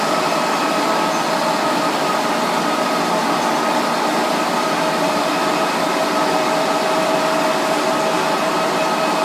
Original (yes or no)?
no